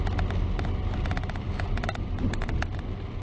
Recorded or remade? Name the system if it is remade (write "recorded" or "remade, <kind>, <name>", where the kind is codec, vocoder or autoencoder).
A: recorded